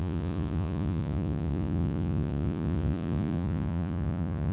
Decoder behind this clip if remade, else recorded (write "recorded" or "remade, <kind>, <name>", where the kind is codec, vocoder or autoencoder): remade, vocoder, Vocos